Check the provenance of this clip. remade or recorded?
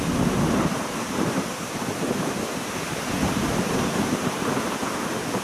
remade